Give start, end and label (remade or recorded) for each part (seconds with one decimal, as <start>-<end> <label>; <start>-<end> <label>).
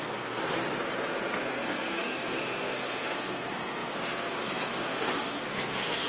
0.0-0.4 remade; 0.4-1.5 recorded; 1.5-6.1 remade